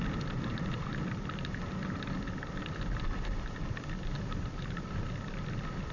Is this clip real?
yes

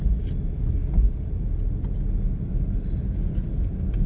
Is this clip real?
yes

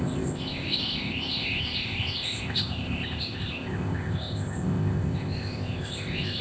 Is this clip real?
no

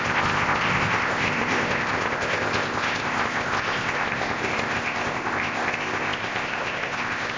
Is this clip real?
no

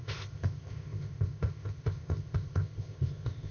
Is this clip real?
no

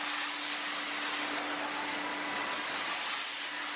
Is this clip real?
yes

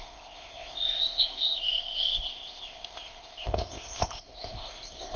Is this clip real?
no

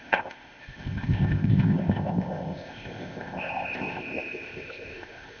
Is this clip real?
no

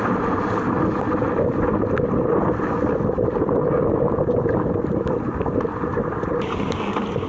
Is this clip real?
yes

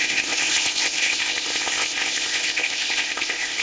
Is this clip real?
no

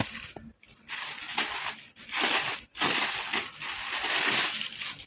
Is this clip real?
yes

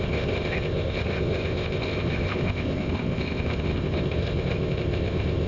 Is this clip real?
no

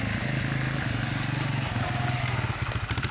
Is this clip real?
yes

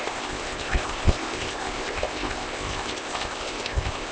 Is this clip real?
no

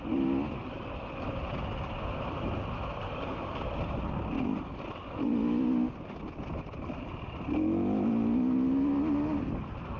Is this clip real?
yes